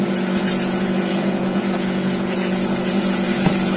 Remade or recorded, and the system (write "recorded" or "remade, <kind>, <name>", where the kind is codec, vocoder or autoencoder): remade, vocoder, Vocos